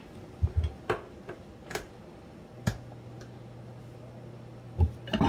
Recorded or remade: recorded